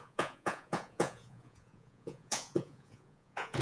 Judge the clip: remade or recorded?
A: remade